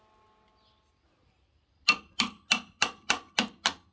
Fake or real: real